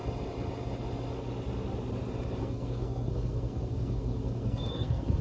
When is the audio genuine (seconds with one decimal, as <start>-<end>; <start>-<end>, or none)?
0.0-2.4